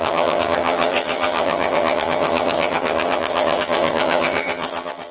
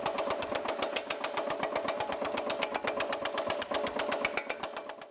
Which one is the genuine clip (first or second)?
second